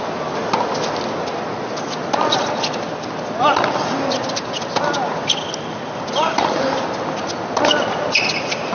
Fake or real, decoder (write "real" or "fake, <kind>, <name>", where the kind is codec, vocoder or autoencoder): real